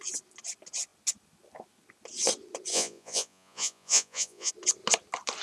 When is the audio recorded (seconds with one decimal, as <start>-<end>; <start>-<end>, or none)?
0.0-2.7; 4.5-5.4